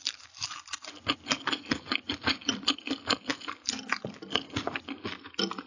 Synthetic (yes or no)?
no